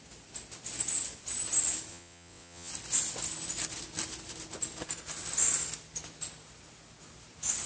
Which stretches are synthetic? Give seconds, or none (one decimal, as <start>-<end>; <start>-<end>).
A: 1.9-2.7